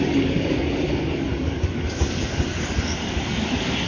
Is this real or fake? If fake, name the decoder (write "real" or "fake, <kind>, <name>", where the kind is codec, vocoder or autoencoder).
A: fake, codec, DAC